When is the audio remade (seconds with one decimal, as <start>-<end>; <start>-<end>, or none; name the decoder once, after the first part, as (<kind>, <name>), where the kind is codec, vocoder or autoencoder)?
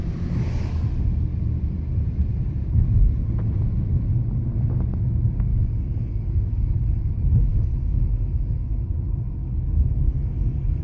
5.5-7.1 (codec, DAC); 7.5-8.8; 9.4-10.8